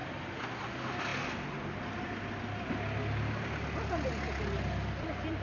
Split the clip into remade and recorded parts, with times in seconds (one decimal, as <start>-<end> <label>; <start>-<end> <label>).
0.0-5.4 recorded